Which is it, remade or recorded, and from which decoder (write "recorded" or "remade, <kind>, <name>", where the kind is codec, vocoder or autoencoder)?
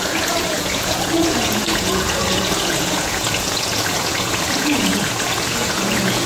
remade, vocoder, Vocos